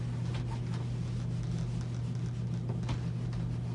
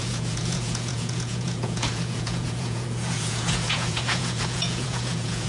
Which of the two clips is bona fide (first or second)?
first